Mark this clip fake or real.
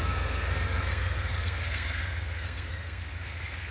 fake